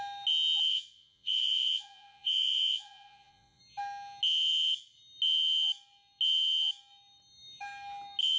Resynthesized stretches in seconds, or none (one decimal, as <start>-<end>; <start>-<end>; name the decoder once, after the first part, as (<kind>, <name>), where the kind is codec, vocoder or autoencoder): 0.7-3.6 (vocoder, Vocos)